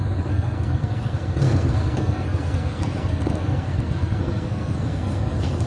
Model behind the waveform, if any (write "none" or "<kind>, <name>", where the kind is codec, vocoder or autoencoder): codec, SNAC